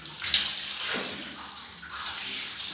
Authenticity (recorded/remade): recorded